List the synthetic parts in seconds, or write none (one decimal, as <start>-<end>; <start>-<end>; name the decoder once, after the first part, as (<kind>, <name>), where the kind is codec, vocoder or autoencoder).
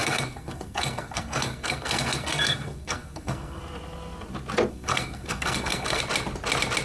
0.0-3.6 (codec, SNAC); 4.7-6.0